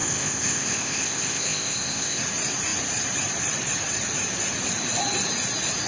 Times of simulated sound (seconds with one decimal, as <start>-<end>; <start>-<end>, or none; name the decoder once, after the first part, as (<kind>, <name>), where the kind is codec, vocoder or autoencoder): 0.0-2.2 (codec, ZipCodec)